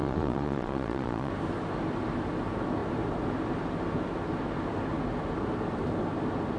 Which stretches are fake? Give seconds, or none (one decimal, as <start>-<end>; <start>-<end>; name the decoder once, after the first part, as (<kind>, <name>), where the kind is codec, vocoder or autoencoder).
0.0-1.3 (vocoder, Vocos)